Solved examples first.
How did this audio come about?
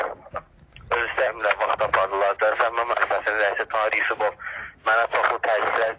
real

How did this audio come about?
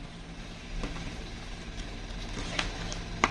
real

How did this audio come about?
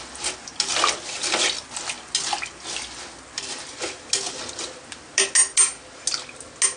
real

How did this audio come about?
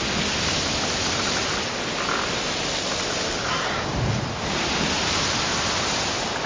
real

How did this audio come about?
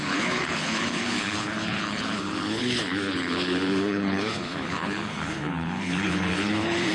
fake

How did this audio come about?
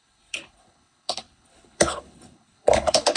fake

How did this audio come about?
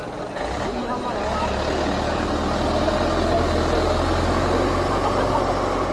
real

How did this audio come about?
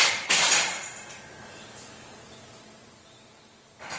real